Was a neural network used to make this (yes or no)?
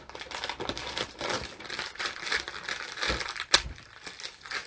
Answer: no